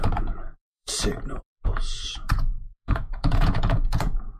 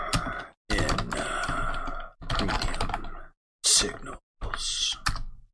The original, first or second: second